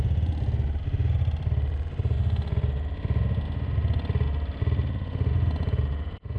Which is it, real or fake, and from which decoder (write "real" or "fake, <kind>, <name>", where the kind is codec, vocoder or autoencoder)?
real